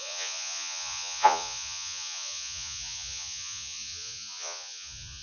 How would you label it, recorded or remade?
remade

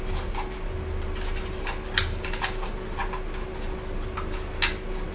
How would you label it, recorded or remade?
recorded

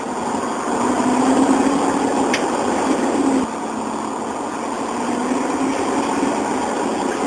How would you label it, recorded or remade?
recorded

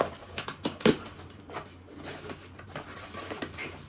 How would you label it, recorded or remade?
recorded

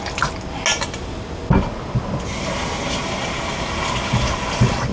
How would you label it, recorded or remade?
recorded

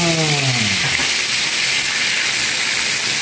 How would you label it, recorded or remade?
recorded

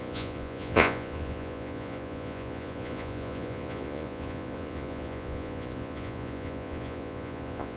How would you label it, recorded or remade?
remade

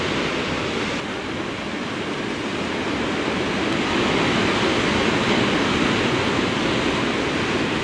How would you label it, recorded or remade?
recorded